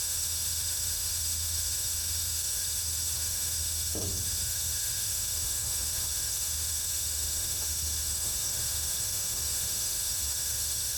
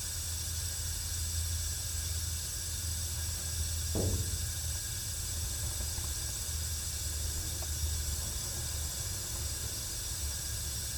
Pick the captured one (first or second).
second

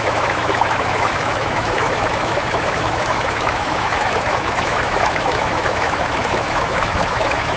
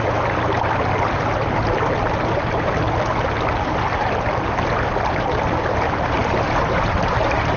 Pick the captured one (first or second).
second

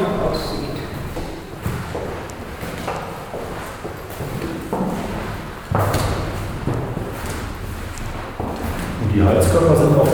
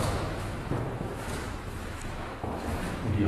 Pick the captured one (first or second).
first